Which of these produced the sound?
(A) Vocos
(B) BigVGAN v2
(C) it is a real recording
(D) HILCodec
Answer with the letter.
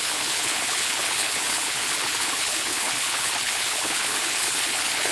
D